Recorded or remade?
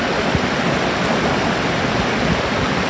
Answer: recorded